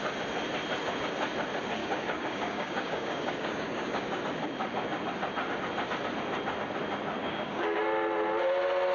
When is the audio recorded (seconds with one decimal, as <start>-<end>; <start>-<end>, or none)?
0.0-1.8; 4.2-7.2; 7.8-8.9